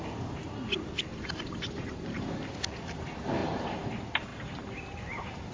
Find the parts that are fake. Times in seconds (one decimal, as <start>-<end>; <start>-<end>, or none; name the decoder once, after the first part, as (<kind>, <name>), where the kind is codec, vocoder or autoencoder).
1.1-2.3 (vocoder, BigVGAN v2); 3.4-3.9; 4.3-5.5